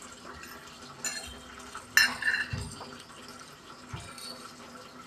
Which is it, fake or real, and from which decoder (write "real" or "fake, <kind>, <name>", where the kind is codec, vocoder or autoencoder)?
real